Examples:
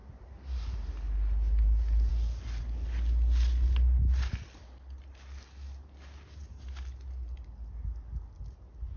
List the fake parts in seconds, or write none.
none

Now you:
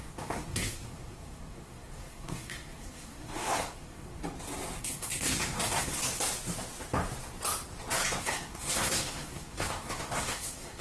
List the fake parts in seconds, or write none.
0.0-4.2 (codec, SNAC); 4.8-6.0; 8.2-10.8

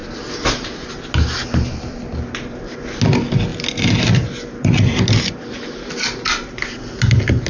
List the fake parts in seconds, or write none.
none